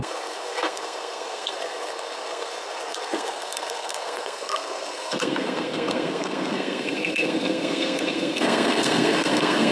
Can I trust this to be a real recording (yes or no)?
no